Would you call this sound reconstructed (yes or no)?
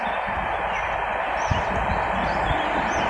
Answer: no